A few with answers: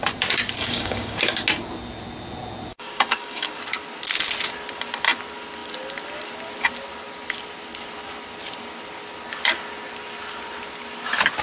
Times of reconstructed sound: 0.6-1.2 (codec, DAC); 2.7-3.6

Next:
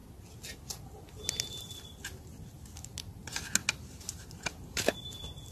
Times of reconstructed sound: none

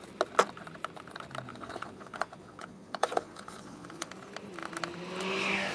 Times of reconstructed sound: 1.5-4.1 (vocoder, Vocos)

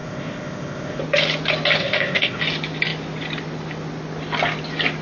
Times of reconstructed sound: 0.0-1.0 (codec, ZipCodec); 1.8-2.4

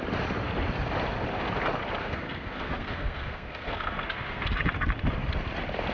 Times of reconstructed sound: 2.0-4.5 (codec, SNAC)

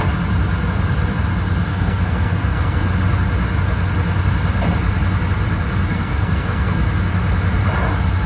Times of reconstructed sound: 1.7-2.9 (codec, SNAC); 5.9-6.8

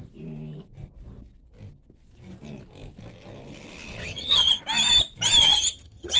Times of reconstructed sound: 4.0-4.6 (vocoder, HiFi-GAN); 5.4-6.2

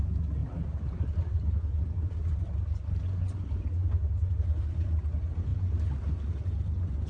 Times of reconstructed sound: none